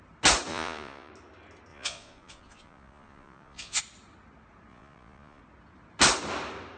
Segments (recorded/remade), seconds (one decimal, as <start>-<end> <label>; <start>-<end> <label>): 0.0-0.5 recorded; 0.5-1.1 remade; 1.1-1.7 recorded; 1.7-3.8 remade; 3.8-4.7 recorded; 4.7-5.4 remade; 5.4-6.8 recorded